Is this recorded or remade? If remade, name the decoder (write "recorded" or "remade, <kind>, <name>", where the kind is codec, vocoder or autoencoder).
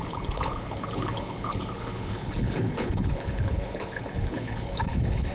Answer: remade, codec, HILCodec